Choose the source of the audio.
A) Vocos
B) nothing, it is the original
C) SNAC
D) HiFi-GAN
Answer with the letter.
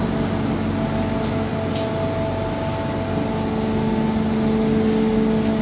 B